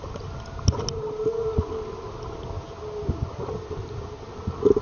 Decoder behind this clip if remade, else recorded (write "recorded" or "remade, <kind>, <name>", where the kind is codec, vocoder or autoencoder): recorded